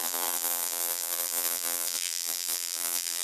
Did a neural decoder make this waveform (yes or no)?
yes